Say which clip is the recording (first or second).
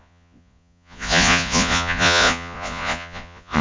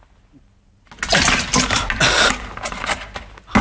second